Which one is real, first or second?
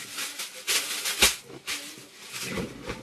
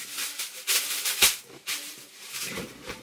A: first